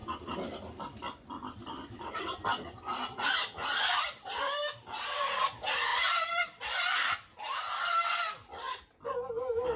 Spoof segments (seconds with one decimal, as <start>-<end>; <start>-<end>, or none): 4.6-5.3